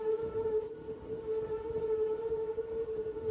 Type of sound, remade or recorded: recorded